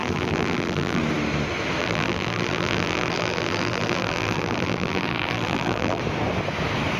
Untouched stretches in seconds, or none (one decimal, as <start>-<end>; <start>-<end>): 1.0-1.8; 6.0-7.0

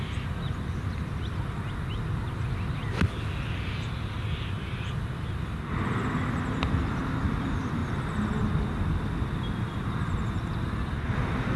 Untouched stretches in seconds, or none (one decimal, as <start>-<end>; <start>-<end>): 0.0-7.8; 8.4-11.6

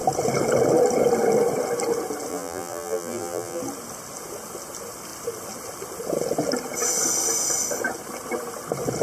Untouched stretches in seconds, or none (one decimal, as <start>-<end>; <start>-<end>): 0.0-2.3; 3.6-9.0

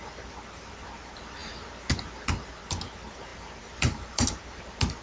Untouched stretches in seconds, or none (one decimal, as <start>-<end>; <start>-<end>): 0.0-3.3; 4.4-5.0

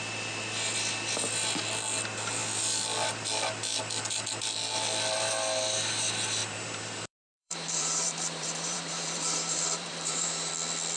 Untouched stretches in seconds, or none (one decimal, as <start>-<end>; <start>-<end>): 0.0-6.4; 10.5-11.0

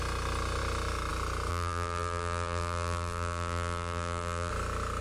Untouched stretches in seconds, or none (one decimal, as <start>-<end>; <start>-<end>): 0.0-1.5; 4.5-5.0

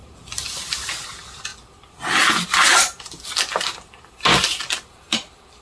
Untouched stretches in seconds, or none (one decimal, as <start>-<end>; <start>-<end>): 1.5-4.9